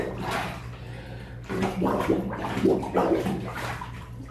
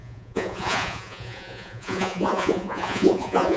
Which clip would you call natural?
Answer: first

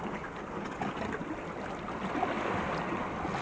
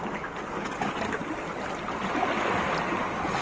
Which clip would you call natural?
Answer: second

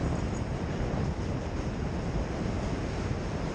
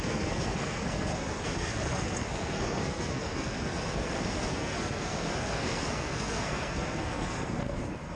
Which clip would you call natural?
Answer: first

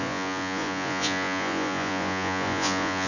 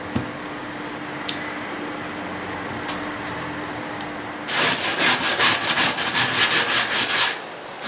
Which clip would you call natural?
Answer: second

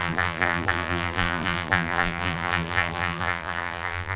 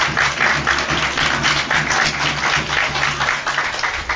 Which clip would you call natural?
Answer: second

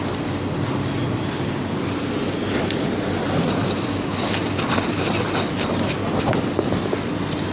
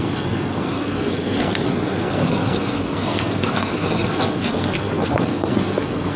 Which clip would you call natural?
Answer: first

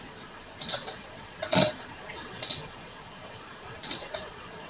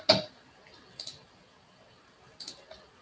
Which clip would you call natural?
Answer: second